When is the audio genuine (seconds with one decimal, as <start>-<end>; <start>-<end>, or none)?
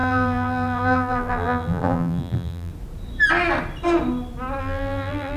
2.7-4.6